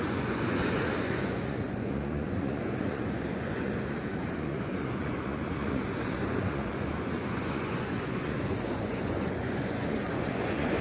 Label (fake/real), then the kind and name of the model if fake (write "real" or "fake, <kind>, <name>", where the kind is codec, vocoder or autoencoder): fake, vocoder, Vocos